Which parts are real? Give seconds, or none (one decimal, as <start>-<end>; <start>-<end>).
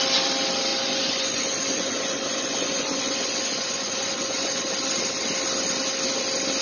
0.0-0.7; 4.7-6.6